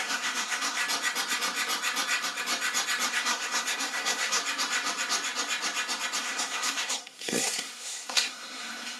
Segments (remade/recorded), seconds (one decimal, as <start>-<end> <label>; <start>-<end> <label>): 0.0-0.8 remade; 0.8-3.1 recorded; 3.1-4.4 remade; 4.4-6.2 recorded; 6.2-9.0 remade